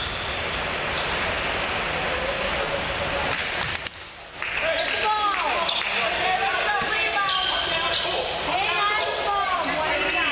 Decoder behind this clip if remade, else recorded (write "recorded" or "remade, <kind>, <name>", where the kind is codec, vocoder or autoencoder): recorded